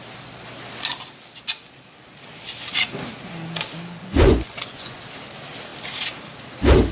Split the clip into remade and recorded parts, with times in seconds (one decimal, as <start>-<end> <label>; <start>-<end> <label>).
0.0-4.0 recorded; 4.0-5.0 remade; 5.0-6.9 recorded